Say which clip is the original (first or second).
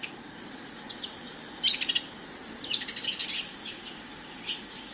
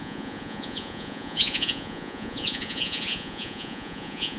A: first